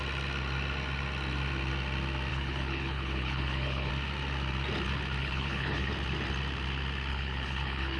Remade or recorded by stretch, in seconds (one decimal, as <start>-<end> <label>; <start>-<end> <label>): 0.0-2.3 recorded; 2.3-3.9 remade; 3.9-5.2 recorded; 5.2-5.9 remade; 5.9-7.1 recorded; 7.1-8.0 remade